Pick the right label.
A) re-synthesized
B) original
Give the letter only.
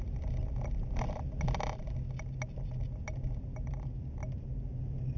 B